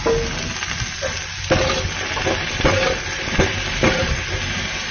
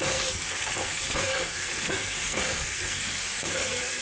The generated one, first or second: second